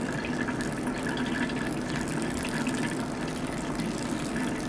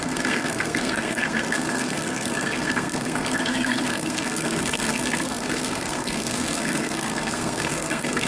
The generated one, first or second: second